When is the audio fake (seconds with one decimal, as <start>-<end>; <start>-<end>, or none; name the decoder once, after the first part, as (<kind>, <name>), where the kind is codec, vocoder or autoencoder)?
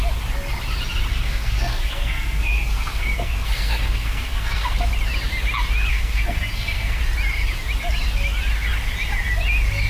1.1-4.9 (codec, SNAC); 5.9-7.0